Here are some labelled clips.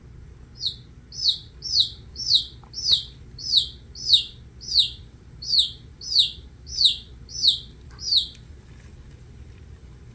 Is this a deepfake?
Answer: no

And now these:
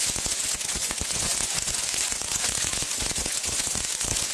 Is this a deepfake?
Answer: yes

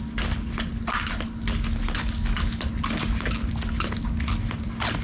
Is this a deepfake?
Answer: no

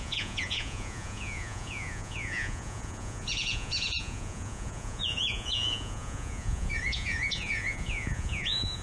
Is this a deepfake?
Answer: yes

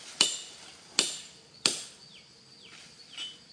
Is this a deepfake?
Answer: no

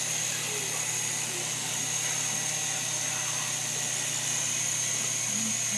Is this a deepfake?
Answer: no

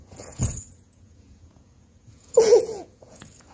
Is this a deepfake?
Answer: yes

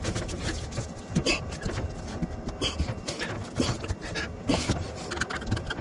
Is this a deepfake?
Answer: no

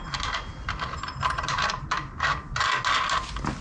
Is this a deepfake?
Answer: no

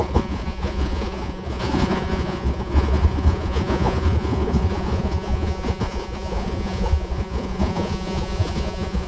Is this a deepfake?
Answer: yes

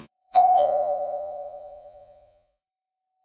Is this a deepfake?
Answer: yes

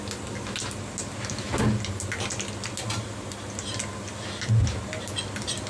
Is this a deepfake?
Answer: no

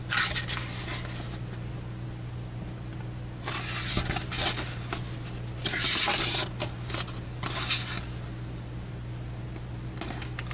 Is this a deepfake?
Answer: no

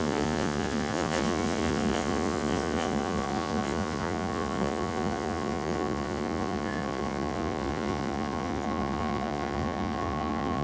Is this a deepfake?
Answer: yes